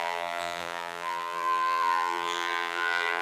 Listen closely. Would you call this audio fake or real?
fake